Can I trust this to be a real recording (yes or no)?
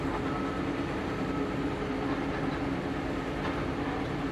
yes